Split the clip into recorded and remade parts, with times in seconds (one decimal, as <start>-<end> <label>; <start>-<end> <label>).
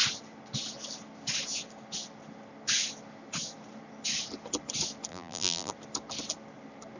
0.0-5.1 recorded; 5.1-5.7 remade; 5.7-7.0 recorded